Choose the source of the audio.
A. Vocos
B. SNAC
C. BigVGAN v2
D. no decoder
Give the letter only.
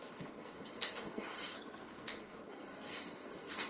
B